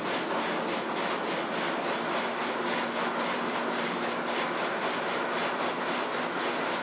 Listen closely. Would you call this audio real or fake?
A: real